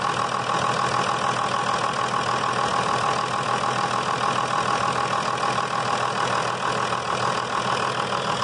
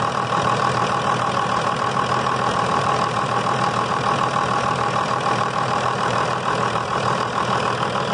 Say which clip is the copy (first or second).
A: second